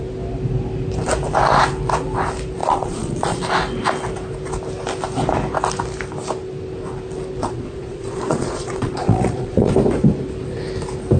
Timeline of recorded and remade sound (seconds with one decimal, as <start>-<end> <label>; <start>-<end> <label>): 0.0-2.6 recorded; 2.6-3.4 remade; 3.4-7.4 recorded; 7.4-9.7 remade; 9.7-11.2 recorded